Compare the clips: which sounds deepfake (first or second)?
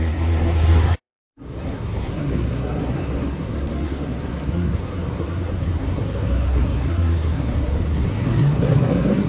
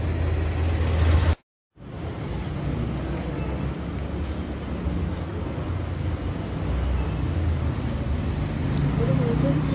first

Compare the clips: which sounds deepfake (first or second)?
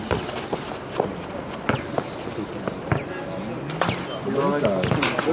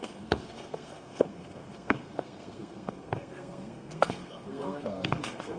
second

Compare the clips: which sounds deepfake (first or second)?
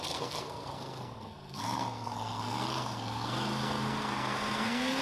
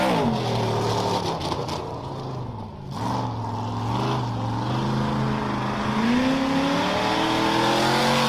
first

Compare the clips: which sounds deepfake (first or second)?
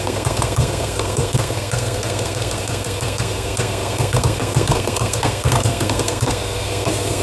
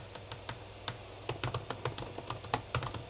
first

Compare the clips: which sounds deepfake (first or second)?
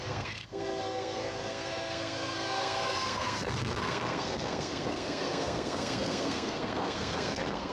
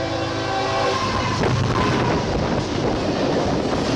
first